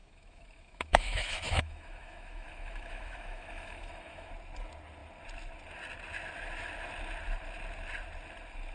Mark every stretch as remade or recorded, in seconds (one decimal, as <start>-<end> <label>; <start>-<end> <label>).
0.0-4.3 remade; 4.3-8.7 recorded